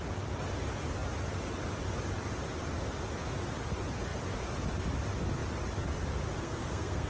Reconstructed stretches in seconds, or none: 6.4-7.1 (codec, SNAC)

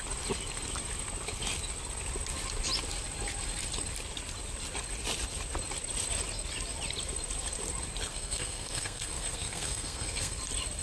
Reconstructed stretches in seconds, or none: 8.1-10.4 (codec, SNAC)

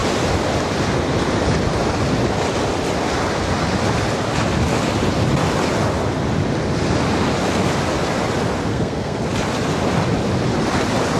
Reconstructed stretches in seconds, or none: 8.7-9.2 (codec, SNAC)

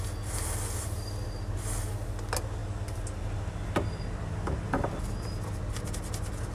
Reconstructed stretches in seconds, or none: none

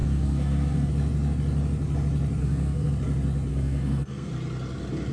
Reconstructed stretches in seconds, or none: 0.0-0.9 (codec, SNAC); 2.4-2.9; 3.5-4.3

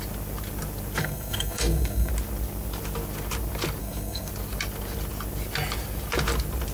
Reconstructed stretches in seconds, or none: 1.0-2.1 (codec, SNAC); 3.8-4.3

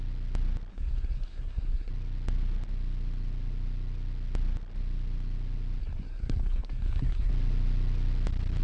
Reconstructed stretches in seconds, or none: 0.7-1.9 (codec, SNAC); 5.8-7.3

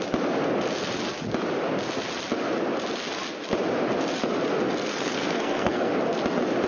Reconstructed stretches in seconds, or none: 4.6-5.9 (codec, SNAC)